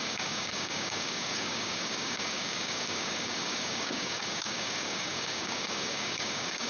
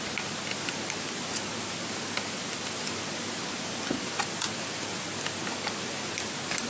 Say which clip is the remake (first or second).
first